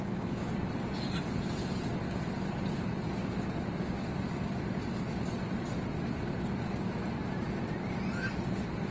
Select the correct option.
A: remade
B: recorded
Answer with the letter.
B